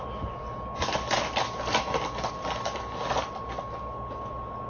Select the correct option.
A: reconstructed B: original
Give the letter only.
B